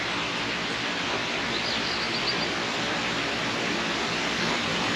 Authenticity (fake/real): real